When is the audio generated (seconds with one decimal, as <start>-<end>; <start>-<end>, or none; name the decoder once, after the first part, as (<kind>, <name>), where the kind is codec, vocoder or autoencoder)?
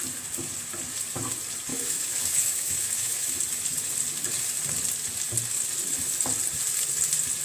1.7-3.4 (autoencoder, DAC-VAE)